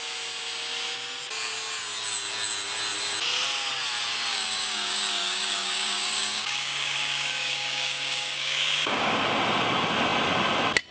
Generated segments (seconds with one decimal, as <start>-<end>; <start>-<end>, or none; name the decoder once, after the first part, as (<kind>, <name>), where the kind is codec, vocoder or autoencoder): 4.3-9.2 (codec, DAC)